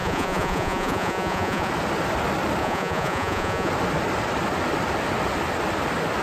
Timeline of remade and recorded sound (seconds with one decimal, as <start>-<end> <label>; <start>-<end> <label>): 0.0-1.7 remade; 1.7-2.6 recorded; 2.6-3.7 remade; 3.7-6.2 recorded